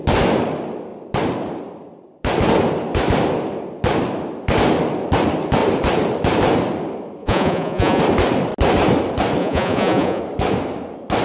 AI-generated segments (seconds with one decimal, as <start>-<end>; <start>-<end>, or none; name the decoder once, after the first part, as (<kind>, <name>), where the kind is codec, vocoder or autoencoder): 7.2-8.0 (vocoder, Vocos); 9.4-10.2

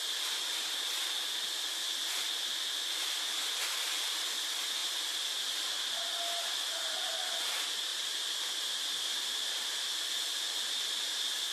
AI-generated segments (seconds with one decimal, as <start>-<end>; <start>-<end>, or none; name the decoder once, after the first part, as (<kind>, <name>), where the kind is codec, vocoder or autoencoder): 4.8-6.0 (vocoder, BigVGAN v2); 7.9-10.4

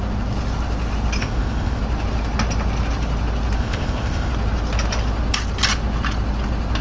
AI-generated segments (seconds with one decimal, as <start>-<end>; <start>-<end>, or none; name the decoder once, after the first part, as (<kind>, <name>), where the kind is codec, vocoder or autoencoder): 1.2-1.8 (codec, ZipCodec); 3.6-4.3

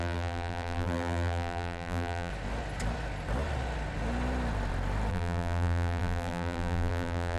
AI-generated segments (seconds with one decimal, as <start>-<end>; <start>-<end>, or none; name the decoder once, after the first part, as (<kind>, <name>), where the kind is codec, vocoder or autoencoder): 0.0-2.3 (vocoder, BigVGAN v2); 5.1-7.4

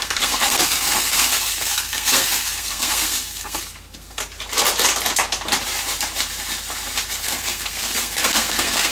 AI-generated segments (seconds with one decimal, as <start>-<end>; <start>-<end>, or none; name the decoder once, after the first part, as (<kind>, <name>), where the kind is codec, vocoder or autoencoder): 0.0-4.2 (codec, SNAC); 7.1-8.9

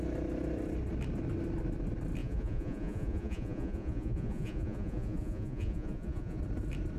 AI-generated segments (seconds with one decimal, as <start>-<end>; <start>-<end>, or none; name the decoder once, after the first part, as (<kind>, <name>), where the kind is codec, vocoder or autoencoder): 2.2-6.4 (vocoder, Vocos)

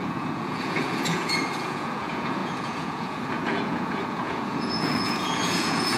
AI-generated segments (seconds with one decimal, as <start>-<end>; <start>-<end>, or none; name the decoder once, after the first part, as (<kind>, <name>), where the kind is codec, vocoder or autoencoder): 0.0-6.0 (vocoder, Vocos)